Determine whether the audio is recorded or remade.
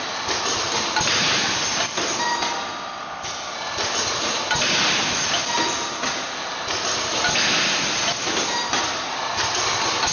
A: recorded